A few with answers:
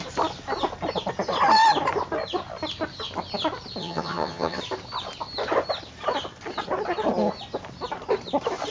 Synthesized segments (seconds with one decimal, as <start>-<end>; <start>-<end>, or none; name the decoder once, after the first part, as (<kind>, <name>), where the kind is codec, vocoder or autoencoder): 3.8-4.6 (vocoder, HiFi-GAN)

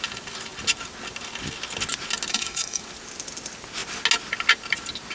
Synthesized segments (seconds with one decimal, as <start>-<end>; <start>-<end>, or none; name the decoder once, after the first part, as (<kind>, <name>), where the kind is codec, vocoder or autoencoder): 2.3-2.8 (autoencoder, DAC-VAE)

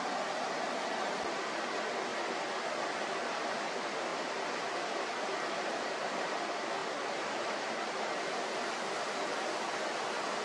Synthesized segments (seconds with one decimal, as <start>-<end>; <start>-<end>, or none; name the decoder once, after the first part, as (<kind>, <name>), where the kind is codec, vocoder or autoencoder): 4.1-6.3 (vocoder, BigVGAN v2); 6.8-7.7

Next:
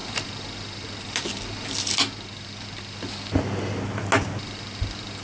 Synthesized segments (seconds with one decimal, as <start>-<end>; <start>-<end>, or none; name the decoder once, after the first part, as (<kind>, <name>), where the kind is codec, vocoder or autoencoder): none